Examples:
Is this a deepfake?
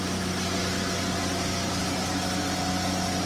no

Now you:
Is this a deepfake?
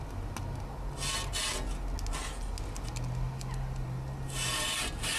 no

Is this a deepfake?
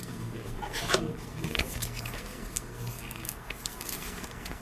yes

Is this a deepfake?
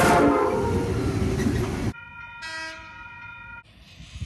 no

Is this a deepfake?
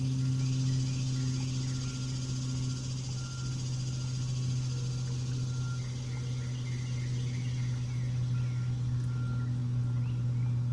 no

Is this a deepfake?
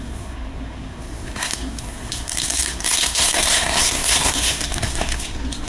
yes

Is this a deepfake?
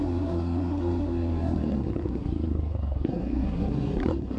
yes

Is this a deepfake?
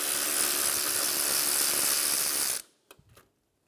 no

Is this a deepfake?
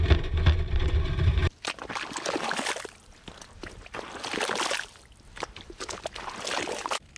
no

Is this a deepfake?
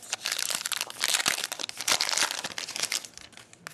no